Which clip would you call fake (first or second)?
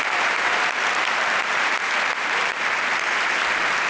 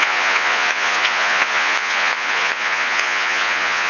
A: second